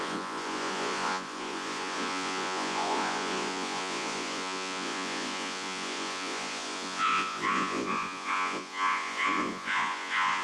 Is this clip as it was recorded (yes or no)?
no